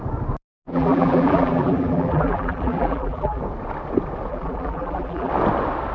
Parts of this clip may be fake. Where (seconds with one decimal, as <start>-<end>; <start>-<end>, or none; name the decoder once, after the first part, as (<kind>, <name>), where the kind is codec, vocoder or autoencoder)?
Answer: 0.7-3.4 (vocoder, BigVGAN v2); 4.3-5.3